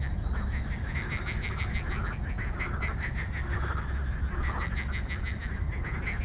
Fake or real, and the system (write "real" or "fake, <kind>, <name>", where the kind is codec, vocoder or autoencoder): real